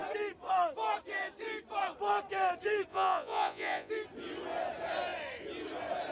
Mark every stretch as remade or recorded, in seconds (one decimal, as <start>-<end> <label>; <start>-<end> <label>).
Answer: 0.0-2.9 recorded; 2.9-3.9 remade; 3.9-6.1 recorded